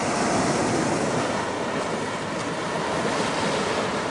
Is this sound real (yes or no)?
yes